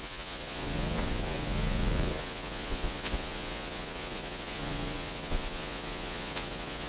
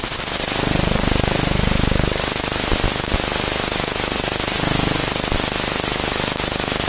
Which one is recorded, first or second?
second